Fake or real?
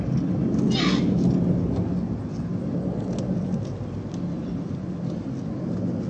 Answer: real